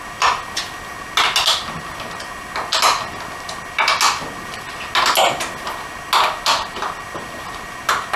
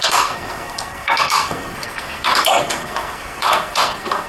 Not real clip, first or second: second